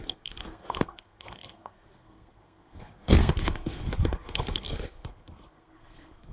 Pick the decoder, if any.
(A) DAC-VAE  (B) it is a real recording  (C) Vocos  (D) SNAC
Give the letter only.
D